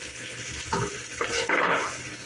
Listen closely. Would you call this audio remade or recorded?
remade